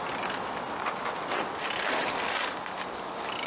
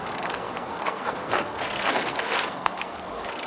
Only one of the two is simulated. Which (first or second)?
second